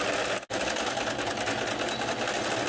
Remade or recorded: recorded